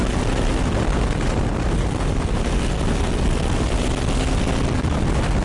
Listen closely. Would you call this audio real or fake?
real